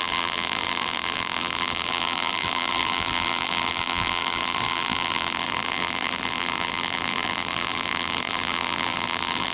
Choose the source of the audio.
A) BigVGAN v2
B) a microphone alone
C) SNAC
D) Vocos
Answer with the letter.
A